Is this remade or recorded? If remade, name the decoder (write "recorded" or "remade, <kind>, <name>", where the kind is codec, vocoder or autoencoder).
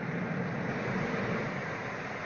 recorded